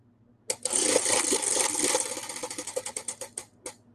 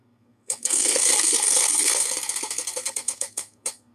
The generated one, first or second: second